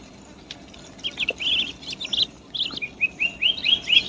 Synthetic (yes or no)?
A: no